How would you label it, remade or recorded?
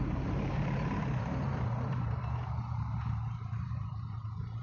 remade